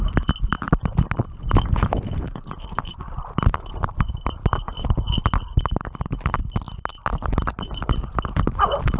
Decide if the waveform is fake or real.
real